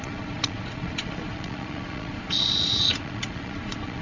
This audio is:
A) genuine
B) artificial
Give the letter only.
B